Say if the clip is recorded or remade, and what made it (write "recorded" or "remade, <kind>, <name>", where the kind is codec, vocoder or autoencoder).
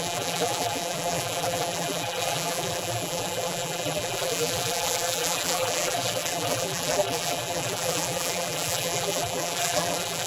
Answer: remade, vocoder, BigVGAN v2